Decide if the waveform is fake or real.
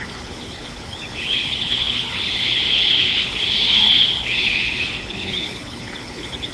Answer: fake